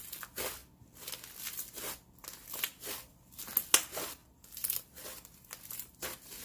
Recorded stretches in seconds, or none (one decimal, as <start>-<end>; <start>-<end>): 0.0-4.2; 4.9-6.4